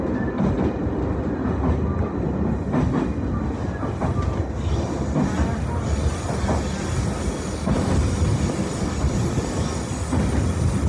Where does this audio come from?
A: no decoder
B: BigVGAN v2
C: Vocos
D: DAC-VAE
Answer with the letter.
A